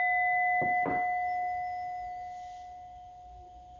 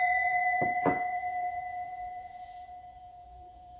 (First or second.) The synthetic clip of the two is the second